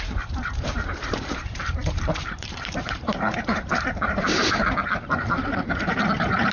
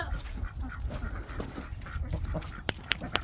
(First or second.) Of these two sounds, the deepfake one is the first